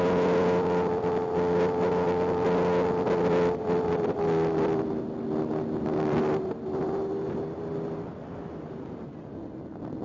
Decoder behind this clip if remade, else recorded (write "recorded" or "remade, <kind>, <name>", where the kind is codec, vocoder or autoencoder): recorded